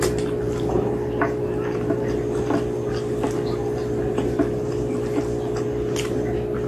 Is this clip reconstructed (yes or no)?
no